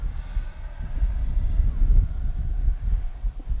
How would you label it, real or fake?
real